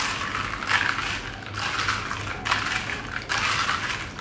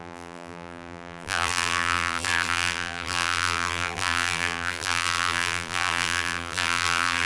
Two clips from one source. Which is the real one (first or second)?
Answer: first